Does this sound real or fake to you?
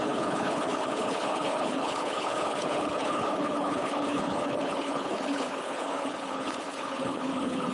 fake